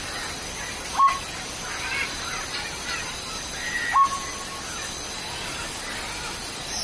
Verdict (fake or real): real